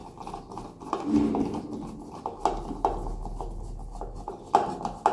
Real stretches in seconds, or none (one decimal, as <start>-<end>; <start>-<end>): 0.0-5.1